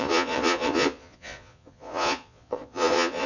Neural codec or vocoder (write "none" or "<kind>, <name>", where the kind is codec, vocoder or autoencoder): vocoder, Vocos